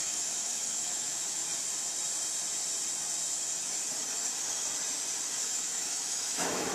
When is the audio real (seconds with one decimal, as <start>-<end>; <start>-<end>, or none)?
1.4-5.4